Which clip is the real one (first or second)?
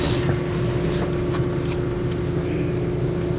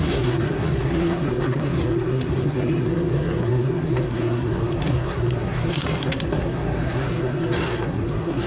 first